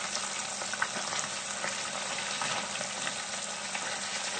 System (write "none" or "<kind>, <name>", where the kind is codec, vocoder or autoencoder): none